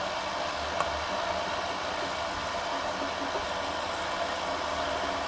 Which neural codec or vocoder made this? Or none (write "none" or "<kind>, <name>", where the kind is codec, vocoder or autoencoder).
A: none